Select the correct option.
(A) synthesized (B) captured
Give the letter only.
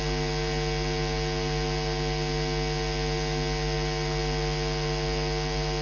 B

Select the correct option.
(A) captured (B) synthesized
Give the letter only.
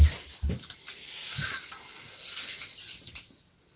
A